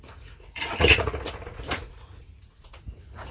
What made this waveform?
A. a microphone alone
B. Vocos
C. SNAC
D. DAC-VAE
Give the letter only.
B